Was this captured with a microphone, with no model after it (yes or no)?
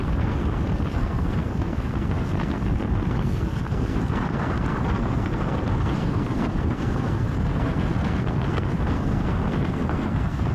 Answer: no